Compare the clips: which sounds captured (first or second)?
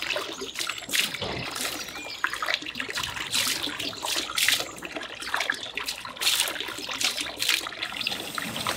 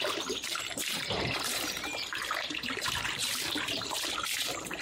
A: first